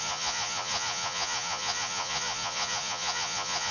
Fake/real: fake